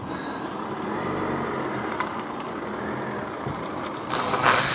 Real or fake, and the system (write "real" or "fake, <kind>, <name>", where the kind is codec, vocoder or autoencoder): real